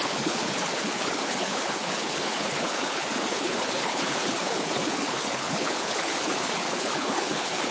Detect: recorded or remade remade